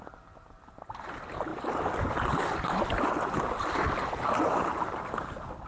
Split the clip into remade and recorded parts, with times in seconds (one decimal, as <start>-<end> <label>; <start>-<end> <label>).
0.0-5.7 recorded